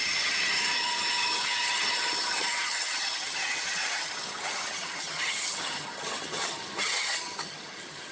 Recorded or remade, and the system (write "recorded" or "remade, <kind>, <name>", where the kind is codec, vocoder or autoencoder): remade, vocoder, HiFi-GAN